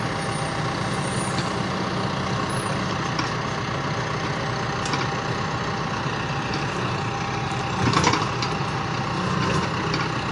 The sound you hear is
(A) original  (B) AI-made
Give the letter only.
A